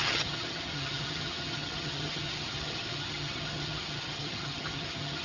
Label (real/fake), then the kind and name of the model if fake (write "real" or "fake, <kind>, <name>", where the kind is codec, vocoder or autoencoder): fake, vocoder, HiFi-GAN